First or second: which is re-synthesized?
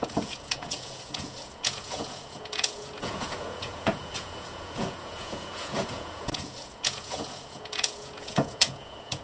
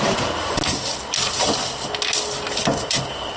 first